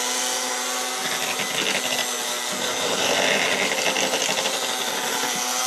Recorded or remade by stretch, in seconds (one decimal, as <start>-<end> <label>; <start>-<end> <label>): 0.0-5.7 recorded